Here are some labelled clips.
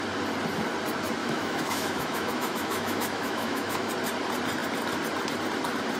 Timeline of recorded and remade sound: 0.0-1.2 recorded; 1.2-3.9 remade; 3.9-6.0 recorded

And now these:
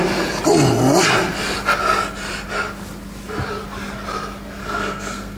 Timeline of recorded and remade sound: 0.0-4.6 recorded; 4.6-5.4 remade

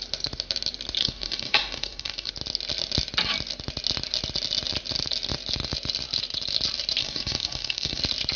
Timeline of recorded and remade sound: 0.0-1.0 recorded; 1.0-2.3 remade; 2.3-7.0 recorded; 7.0-8.0 remade; 8.0-8.4 recorded

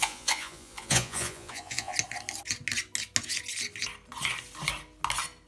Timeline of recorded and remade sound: 0.0-1.9 remade; 1.9-5.5 recorded

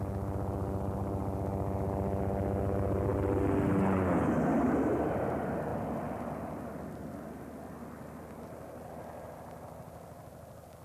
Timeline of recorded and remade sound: 0.0-10.8 recorded